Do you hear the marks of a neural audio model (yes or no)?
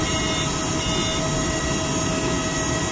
no